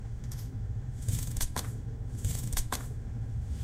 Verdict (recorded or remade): remade